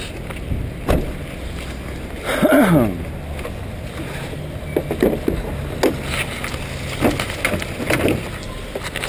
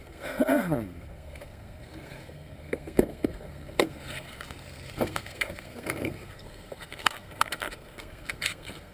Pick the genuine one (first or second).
first